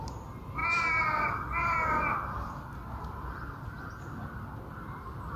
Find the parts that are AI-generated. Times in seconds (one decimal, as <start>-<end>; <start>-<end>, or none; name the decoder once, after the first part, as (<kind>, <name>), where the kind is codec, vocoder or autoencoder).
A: none